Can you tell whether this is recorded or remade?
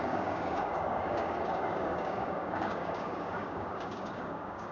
remade